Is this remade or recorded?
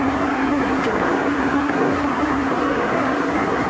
remade